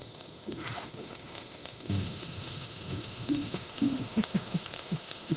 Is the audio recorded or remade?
remade